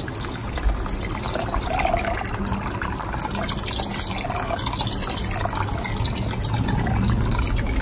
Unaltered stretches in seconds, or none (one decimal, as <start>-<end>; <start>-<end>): 0.0-7.8